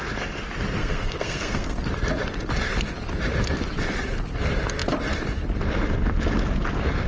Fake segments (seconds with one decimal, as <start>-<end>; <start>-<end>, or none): 0.8-1.8